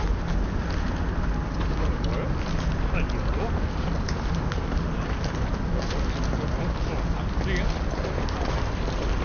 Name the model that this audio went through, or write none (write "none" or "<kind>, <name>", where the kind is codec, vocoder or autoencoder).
none